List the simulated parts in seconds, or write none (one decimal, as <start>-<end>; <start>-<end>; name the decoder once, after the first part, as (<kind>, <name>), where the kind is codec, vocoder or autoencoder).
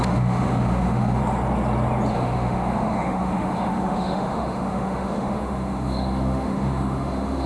0.0-1.2 (autoencoder, DAC-VAE); 2.1-7.5